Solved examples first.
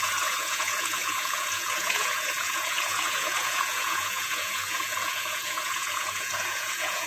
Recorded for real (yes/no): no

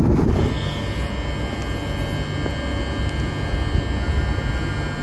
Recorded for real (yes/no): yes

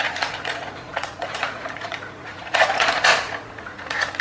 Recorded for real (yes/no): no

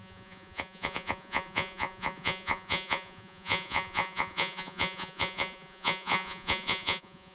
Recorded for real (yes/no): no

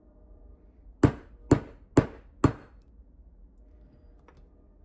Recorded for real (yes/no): yes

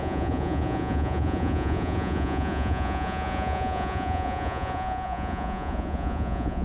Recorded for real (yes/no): no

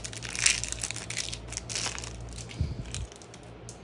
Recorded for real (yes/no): yes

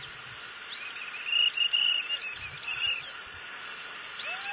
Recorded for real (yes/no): yes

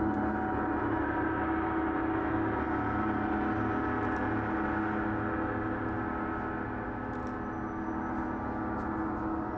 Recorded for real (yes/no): yes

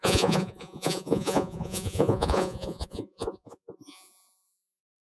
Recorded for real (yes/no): no